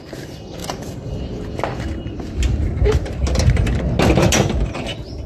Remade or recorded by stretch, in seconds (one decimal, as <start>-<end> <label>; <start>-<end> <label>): 0.0-0.6 recorded; 0.6-1.1 remade; 1.1-5.3 recorded